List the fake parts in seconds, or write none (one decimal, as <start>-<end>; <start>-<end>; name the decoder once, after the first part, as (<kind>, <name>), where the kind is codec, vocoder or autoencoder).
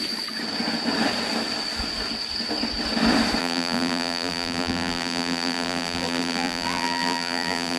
3.4-7.8 (vocoder, BigVGAN v2)